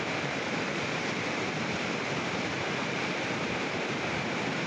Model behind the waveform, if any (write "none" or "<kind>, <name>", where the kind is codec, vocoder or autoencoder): vocoder, BigVGAN v2